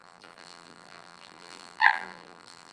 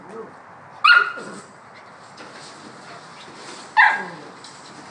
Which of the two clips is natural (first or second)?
second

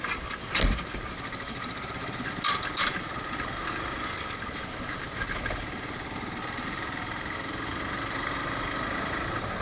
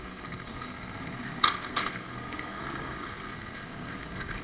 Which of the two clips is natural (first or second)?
first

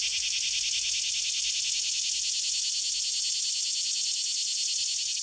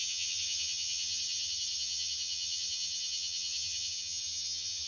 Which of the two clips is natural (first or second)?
first